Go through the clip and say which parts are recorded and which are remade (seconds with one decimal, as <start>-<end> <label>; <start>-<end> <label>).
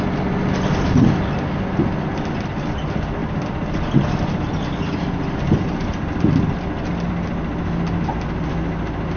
0.0-9.2 recorded